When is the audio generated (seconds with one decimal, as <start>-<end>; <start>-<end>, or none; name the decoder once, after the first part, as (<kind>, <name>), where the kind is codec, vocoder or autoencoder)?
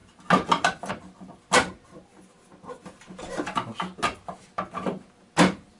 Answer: none